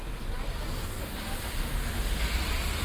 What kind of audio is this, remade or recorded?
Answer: remade